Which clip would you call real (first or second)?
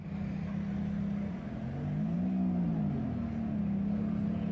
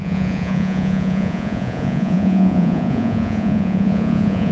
first